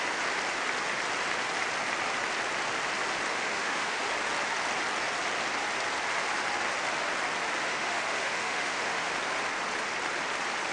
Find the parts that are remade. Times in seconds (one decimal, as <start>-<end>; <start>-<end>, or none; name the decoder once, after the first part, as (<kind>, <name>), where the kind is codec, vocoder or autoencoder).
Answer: 3.3-4.1 (autoencoder, DAC-VAE); 7.6-9.1